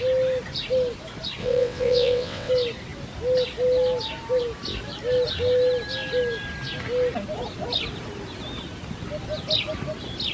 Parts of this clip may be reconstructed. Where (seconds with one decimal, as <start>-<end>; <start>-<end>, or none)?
1.4-2.5